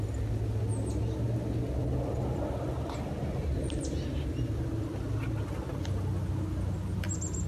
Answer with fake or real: real